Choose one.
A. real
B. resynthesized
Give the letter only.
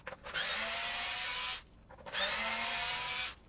A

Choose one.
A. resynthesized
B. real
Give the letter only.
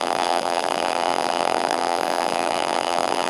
A